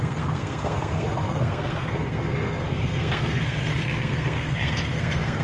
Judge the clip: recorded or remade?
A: remade